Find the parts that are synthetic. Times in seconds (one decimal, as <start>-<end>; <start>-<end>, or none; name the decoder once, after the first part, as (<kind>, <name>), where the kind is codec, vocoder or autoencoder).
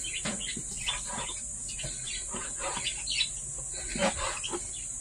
none